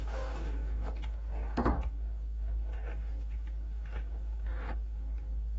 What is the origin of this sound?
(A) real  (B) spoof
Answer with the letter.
B